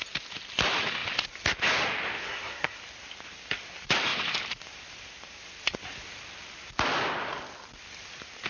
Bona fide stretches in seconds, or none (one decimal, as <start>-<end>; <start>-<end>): 0.0-2.2; 2.8-8.5